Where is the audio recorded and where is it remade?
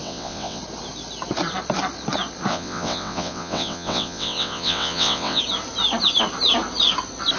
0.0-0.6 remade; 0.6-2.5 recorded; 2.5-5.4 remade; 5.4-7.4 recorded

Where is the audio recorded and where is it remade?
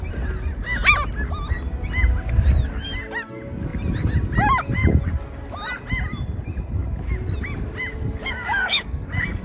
0.0-8.2 recorded; 8.2-9.4 remade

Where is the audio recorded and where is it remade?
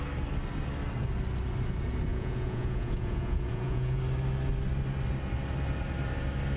0.0-2.1 recorded; 2.1-4.0 remade; 4.0-6.6 recorded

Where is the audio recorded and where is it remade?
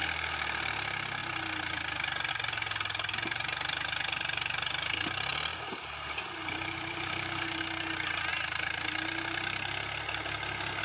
0.0-0.7 remade; 0.7-5.3 recorded; 5.3-7.6 remade; 7.6-10.8 recorded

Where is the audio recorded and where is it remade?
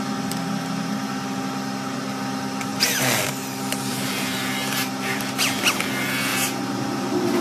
0.0-2.7 recorded; 2.7-3.2 remade; 3.2-3.9 recorded; 3.9-5.2 remade; 5.2-6.3 recorded; 6.3-7.4 remade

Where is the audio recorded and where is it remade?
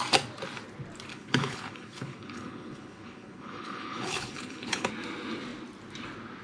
0.0-1.1 recorded; 1.1-4.9 remade; 4.9-6.4 recorded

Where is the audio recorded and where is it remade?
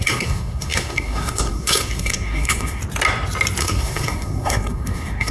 0.0-2.8 remade; 2.8-3.6 recorded; 3.6-5.3 remade